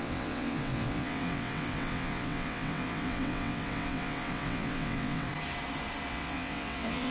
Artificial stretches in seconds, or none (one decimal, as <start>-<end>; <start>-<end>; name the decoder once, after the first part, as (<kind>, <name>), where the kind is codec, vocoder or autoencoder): 0.0-5.3 (vocoder, WaveNeXt); 6.1-7.1